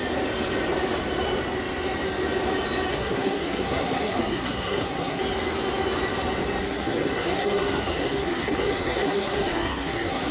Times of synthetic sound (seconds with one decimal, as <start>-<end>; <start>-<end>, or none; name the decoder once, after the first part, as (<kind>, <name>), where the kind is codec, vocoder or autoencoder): 2.9-5.2 (codec, SNAC); 6.6-10.3